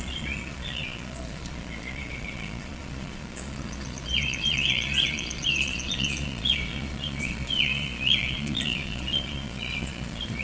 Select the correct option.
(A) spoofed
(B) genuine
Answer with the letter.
A